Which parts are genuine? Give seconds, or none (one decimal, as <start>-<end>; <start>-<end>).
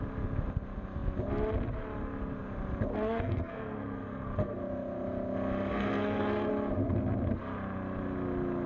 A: 0.0-2.9; 4.6-5.7; 6.5-8.7